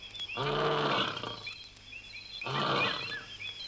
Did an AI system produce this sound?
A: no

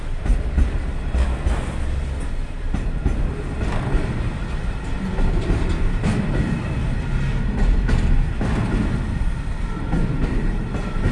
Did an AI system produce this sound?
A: no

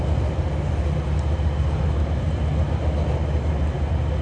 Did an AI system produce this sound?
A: no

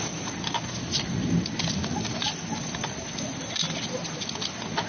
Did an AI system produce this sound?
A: no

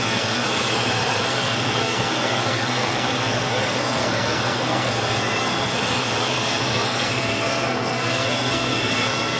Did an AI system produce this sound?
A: yes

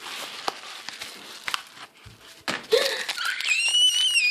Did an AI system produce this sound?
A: no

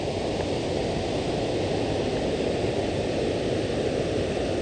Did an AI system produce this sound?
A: no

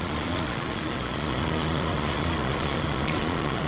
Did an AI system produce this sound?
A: yes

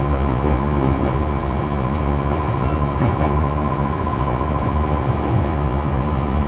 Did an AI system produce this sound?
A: yes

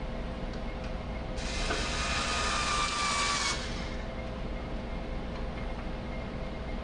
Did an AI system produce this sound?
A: no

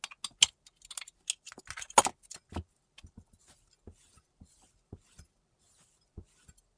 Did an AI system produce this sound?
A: no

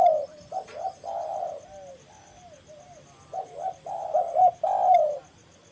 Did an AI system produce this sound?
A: no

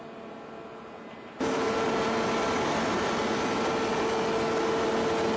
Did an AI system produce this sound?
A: no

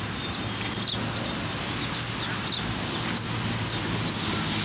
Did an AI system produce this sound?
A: no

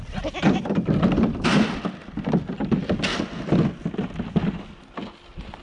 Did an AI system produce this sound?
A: no